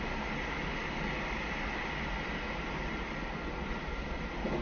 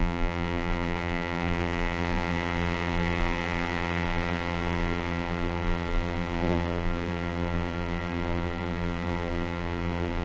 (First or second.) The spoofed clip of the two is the second